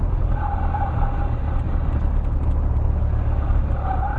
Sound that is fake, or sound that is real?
real